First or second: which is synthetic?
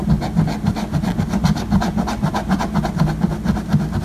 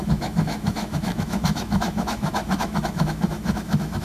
second